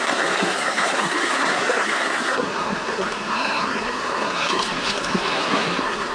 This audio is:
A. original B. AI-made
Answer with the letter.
B